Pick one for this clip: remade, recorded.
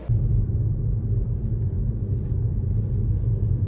recorded